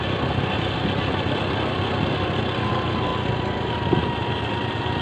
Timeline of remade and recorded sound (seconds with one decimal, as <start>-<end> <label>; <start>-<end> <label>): 0.0-5.0 recorded